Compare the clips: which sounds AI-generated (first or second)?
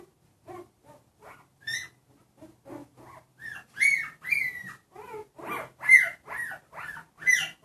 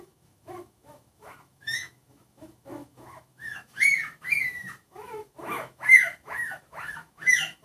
second